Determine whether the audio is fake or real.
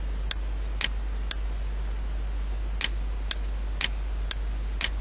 real